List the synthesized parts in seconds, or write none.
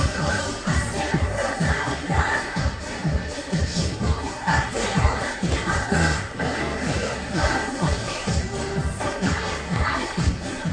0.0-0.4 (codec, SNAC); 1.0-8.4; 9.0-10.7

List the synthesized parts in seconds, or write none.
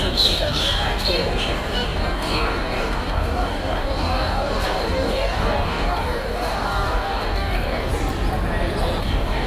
0.0-7.9 (codec, DAC); 9.0-9.5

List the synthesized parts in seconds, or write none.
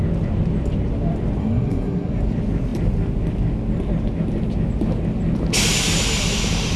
1.4-2.2 (codec, SNAC)